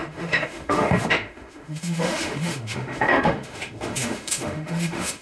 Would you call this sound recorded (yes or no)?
no